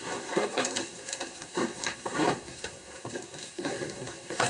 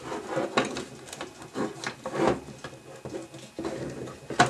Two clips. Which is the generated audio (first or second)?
first